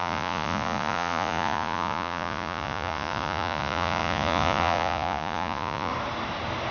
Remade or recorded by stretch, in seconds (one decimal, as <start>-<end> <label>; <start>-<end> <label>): 0.0-5.9 remade; 5.9-6.7 recorded